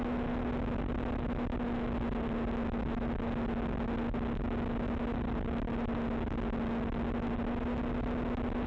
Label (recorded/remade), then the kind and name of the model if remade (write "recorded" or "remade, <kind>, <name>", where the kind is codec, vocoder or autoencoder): recorded